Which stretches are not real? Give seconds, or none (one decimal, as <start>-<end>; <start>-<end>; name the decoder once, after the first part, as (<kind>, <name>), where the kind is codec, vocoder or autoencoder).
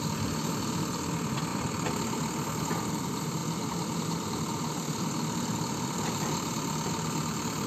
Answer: 1.5-2.7 (vocoder, BigVGAN v2); 3.4-6.9